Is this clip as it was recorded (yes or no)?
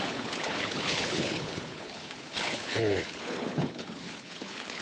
no